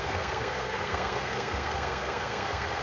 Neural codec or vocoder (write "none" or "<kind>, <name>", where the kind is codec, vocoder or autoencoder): codec, SNAC